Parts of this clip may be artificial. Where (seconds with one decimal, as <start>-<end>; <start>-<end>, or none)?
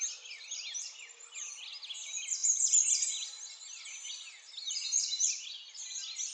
none